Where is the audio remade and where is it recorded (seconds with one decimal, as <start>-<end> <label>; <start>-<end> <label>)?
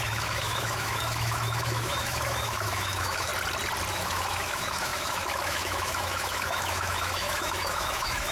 0.0-3.3 remade; 3.3-3.9 recorded; 3.9-8.3 remade